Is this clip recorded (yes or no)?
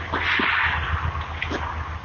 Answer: yes